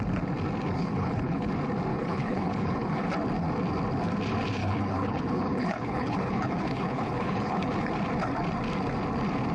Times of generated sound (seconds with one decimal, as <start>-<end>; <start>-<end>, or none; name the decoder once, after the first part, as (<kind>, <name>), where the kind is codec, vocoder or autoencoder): 0.8-1.5 (codec, HILCodec); 1.9-3.1; 4.6-7.9